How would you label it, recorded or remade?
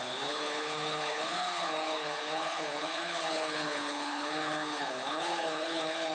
remade